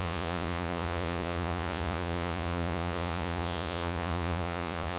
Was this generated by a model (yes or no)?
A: yes